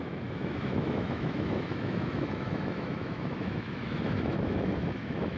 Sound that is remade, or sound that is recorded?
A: remade